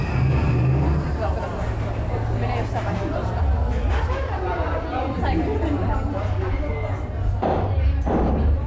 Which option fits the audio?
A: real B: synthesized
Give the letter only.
A